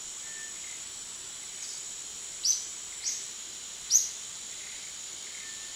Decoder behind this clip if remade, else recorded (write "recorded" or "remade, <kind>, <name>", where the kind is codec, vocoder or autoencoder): recorded